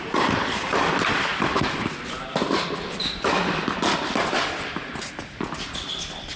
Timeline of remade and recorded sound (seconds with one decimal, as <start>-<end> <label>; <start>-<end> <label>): 0.0-6.4 remade